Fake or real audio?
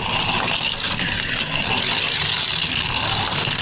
real